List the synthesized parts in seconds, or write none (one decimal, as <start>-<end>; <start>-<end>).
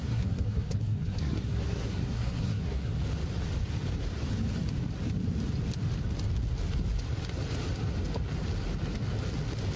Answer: 0.0-2.9